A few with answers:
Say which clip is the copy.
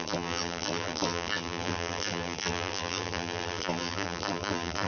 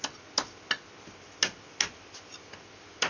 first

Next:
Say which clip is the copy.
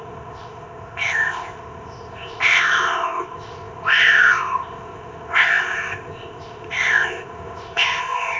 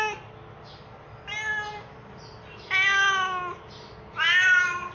first